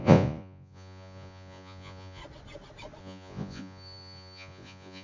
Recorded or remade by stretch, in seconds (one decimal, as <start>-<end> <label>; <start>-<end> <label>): 0.0-2.2 remade; 2.2-3.0 recorded; 3.0-5.0 remade